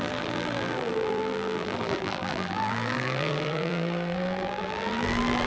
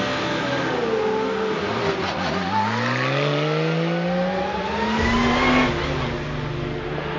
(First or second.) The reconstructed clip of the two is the first